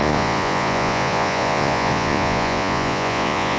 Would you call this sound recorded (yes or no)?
no